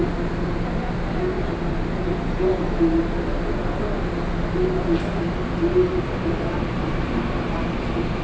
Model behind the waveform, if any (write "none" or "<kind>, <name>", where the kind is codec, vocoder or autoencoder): none